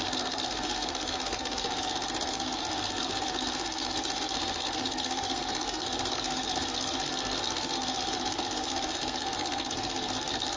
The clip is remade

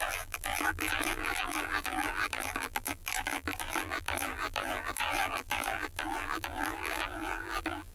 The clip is remade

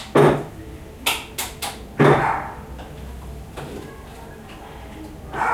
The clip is recorded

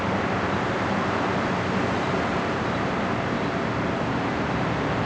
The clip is remade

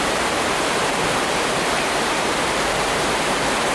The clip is remade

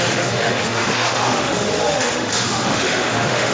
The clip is remade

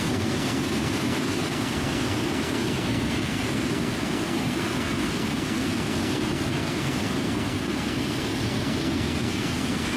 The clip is remade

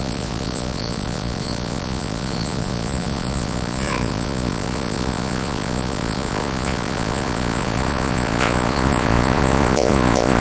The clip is remade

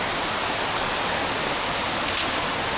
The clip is recorded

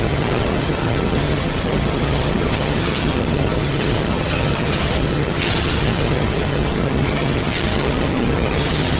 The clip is remade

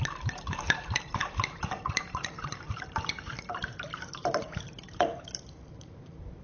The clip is remade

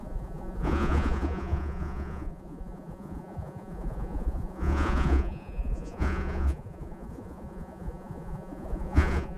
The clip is remade